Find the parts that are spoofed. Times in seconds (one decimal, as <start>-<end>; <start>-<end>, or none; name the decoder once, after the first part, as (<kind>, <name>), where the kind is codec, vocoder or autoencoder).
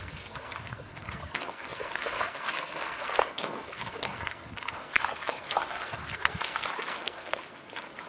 0.0-8.1 (codec, SNAC)